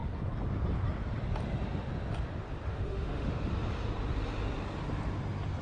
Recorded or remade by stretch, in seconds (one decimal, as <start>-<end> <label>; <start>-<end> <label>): 0.0-2.7 recorded; 2.7-3.5 remade; 3.5-5.6 recorded